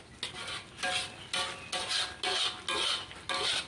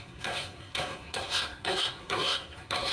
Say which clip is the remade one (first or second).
second